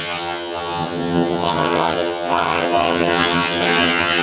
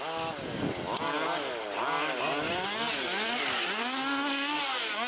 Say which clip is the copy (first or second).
first